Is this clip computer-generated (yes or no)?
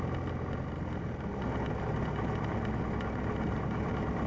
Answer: no